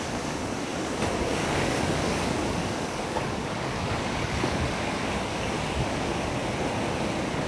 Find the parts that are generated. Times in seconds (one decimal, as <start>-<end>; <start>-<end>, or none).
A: 0.0-6.4; 7.1-7.5